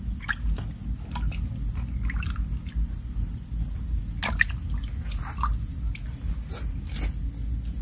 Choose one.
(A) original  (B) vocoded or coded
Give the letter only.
A